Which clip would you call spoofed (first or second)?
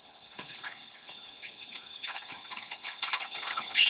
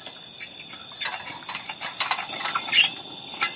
first